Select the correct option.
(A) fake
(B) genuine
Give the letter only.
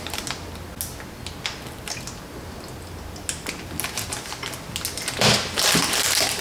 B